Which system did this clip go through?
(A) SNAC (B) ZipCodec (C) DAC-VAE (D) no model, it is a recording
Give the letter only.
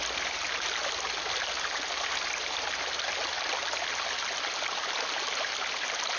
D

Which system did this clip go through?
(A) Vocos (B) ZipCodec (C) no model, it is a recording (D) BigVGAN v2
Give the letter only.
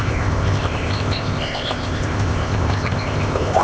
B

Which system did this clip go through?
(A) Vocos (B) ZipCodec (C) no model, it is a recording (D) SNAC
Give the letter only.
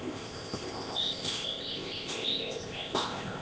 B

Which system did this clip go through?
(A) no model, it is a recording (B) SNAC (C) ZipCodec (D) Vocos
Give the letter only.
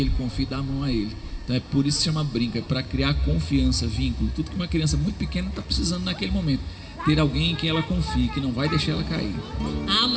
A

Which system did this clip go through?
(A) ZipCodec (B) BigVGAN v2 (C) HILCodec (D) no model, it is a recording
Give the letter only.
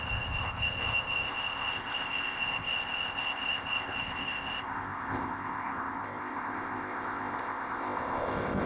A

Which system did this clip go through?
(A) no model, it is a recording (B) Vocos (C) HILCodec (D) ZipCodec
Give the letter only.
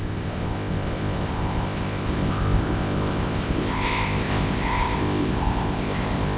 D